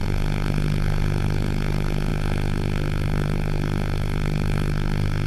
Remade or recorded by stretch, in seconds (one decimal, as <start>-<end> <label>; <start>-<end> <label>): 0.0-5.3 remade